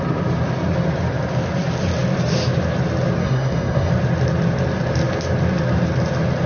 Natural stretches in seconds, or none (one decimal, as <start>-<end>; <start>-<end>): 0.0-3.2; 3.9-6.5